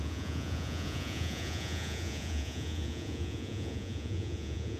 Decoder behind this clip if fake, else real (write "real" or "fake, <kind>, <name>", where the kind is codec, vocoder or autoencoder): fake, vocoder, Vocos